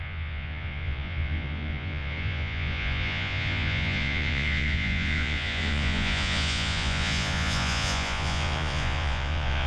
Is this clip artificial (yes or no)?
yes